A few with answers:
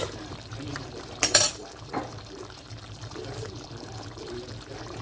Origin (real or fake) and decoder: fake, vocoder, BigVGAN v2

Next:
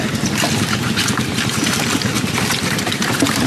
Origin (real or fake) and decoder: fake, vocoder, BigVGAN v2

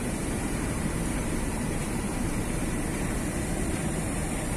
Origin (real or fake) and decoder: fake, vocoder, BigVGAN v2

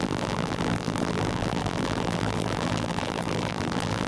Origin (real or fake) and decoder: fake, vocoder, BigVGAN v2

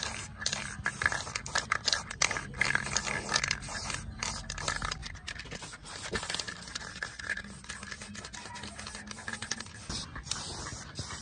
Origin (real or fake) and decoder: real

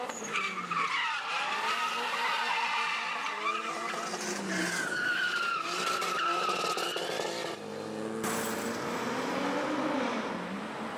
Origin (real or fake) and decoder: real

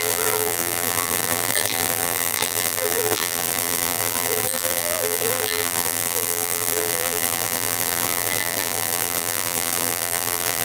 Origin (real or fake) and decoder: fake, vocoder, BigVGAN v2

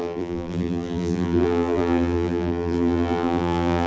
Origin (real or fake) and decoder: fake, vocoder, BigVGAN v2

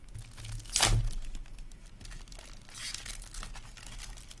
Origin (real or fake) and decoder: real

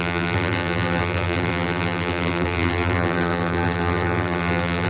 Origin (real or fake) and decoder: fake, vocoder, BigVGAN v2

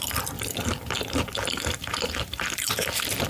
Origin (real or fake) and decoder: fake, vocoder, BigVGAN v2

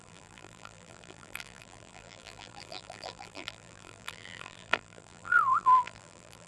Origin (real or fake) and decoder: fake, vocoder, BigVGAN v2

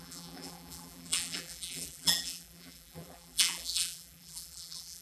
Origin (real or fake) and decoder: fake, vocoder, BigVGAN v2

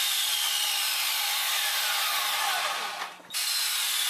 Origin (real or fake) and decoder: real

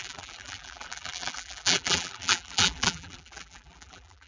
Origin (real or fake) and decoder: fake, vocoder, BigVGAN v2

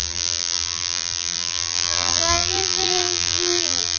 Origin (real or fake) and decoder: fake, vocoder, BigVGAN v2